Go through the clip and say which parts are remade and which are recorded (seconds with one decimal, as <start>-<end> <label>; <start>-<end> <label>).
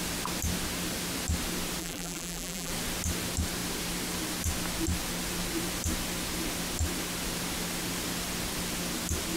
0.0-1.8 recorded; 1.8-2.7 remade; 2.7-9.4 recorded